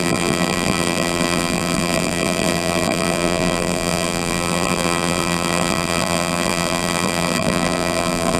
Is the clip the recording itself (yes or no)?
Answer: no